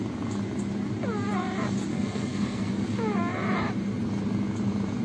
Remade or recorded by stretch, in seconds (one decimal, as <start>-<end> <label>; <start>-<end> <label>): 0.0-1.9 recorded; 1.9-2.7 remade; 2.7-5.0 recorded